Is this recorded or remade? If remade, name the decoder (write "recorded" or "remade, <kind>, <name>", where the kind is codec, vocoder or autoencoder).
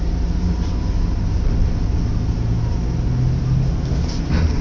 recorded